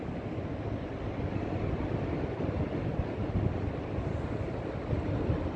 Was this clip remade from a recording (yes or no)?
no